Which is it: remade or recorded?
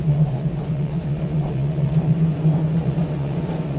remade